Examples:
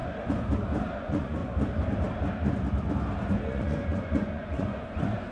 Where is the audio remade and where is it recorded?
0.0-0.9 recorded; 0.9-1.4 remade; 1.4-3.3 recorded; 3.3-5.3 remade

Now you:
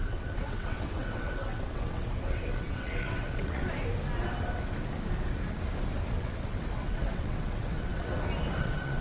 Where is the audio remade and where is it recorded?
0.0-3.6 remade; 3.6-6.1 recorded; 6.1-8.1 remade; 8.1-8.6 recorded; 8.6-9.0 remade